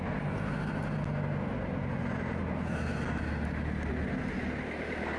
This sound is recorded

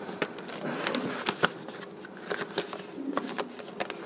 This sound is recorded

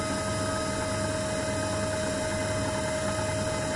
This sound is recorded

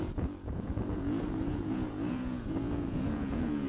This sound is remade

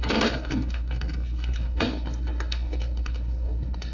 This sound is remade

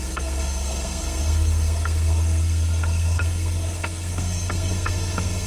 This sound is remade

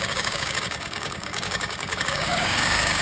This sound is remade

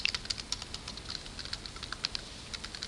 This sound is recorded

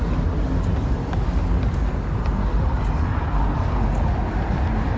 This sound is recorded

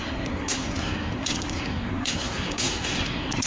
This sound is remade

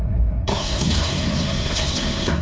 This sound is remade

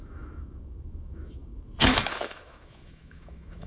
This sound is remade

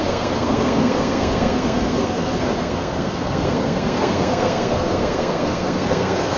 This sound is remade